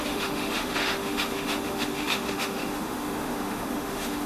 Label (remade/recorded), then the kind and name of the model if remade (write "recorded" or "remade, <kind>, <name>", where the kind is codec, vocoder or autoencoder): remade, autoencoder, DAC-VAE